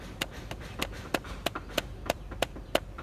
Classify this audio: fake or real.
fake